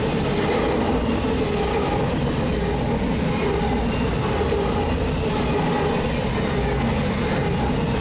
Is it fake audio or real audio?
real